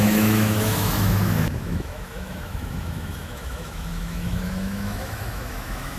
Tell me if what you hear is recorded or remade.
remade